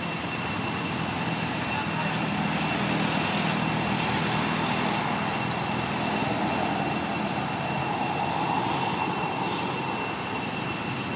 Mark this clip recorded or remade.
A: recorded